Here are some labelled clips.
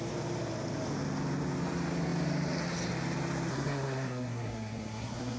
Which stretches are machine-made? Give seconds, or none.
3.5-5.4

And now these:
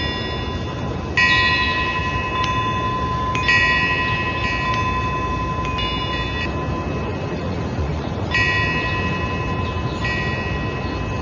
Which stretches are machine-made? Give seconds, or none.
7.1-8.3

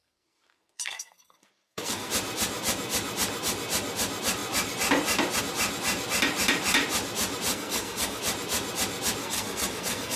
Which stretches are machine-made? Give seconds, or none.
0.0-2.1; 7.5-8.2; 9.2-10.2

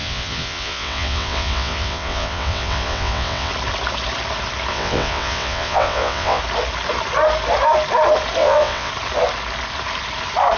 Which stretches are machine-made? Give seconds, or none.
0.0-3.5; 4.7-6.4; 8.4-8.9